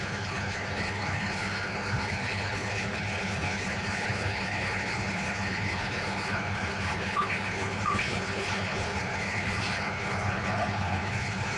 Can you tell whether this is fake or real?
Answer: fake